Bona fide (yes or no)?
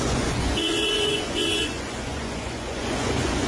no